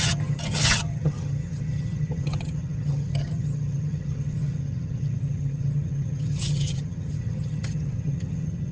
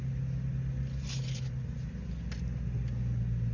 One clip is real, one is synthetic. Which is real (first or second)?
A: second